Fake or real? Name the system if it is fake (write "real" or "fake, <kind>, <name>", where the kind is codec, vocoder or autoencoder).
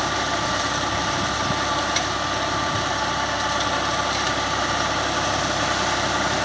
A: real